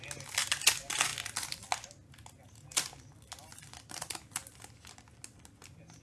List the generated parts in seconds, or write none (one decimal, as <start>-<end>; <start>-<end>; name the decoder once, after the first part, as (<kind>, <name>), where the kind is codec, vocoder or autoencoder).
none